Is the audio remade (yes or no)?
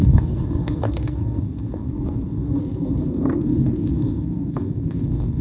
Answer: yes